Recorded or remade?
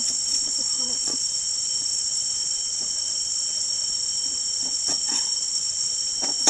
remade